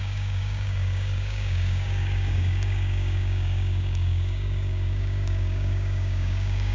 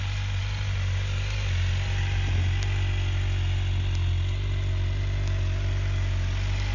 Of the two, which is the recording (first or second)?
second